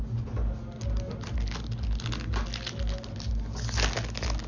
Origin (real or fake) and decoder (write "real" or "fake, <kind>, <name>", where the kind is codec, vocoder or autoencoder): real